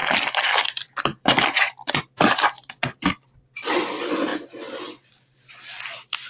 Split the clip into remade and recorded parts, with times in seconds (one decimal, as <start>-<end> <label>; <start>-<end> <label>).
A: 0.0-2.0 remade; 2.0-4.3 recorded; 4.3-6.3 remade